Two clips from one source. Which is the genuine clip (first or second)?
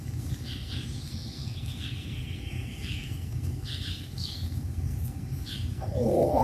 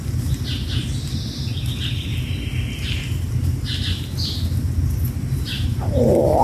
second